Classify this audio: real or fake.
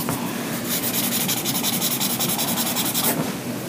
real